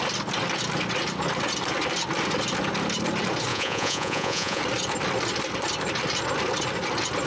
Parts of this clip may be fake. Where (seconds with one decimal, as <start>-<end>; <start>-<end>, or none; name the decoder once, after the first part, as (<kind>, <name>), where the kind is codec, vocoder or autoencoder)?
3.5-4.6 (vocoder, Vocos)